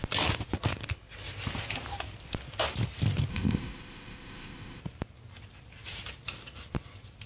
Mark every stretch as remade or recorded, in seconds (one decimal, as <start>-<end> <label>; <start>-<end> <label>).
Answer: 0.0-3.3 recorded; 3.3-4.8 remade; 4.8-7.3 recorded